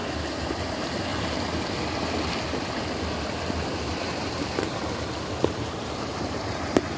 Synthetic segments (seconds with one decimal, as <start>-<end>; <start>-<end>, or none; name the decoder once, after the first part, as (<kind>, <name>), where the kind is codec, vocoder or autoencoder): 0.5-1.1 (vocoder, BigVGAN v2); 4.0-4.8; 5.3-7.0